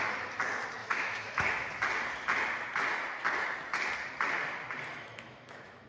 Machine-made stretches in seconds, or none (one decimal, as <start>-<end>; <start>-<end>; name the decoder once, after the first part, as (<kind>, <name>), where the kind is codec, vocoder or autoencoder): 0.8-1.5 (autoencoder, DAC-VAE); 4.9-5.9